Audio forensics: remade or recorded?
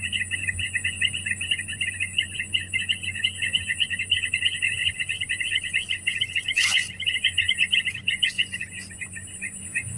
remade